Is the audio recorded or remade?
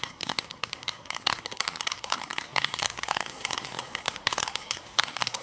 remade